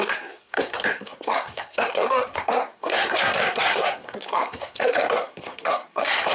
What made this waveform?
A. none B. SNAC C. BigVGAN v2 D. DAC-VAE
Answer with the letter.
B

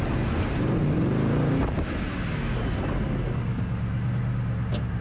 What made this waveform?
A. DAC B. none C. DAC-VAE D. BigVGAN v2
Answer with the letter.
B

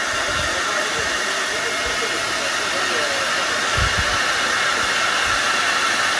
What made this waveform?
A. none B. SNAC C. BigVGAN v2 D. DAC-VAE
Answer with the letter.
A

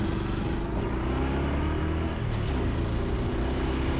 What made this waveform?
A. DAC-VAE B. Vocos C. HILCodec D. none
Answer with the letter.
D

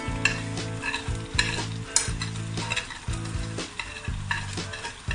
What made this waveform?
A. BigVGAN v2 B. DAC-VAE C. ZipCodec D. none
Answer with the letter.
D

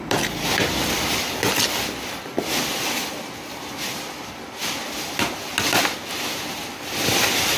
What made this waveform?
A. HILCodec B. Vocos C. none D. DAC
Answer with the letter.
C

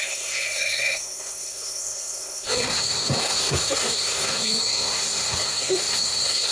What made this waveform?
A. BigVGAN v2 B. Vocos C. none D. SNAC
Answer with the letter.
D